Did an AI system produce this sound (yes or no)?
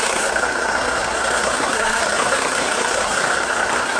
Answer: yes